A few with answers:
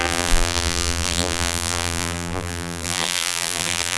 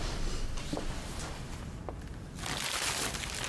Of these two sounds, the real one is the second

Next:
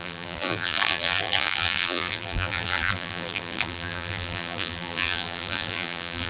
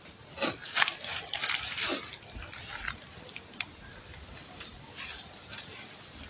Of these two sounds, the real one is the second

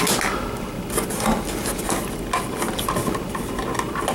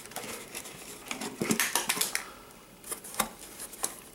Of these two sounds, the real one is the first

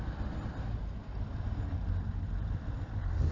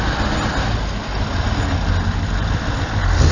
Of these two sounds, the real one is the second